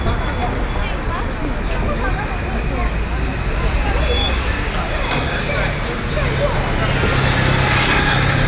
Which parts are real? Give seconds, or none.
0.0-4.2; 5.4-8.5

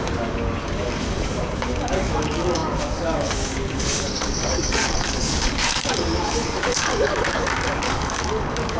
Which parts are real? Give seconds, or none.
none

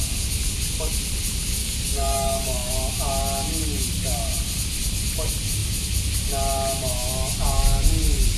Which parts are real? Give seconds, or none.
0.0-1.6; 2.7-8.4